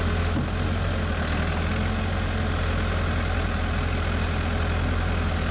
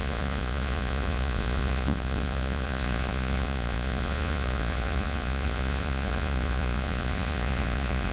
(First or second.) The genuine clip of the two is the first